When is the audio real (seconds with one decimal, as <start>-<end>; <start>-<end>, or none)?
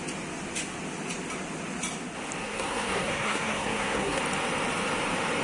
0.0-2.4; 4.2-5.4